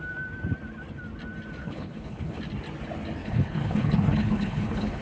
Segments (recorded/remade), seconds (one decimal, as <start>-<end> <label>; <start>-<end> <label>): 0.0-1.6 recorded; 1.6-2.4 remade; 2.4-3.2 recorded; 3.2-5.0 remade